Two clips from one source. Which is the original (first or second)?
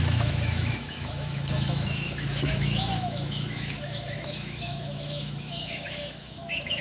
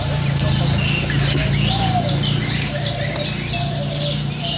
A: second